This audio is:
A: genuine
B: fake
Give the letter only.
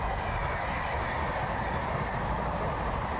A